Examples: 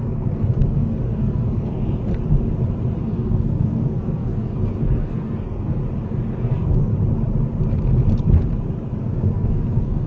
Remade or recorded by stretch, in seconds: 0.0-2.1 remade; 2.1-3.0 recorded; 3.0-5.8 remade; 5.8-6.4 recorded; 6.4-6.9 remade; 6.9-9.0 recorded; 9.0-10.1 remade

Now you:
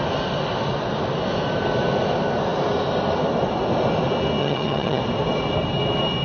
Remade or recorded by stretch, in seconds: 0.0-4.4 recorded; 4.4-5.0 remade; 5.0-6.2 recorded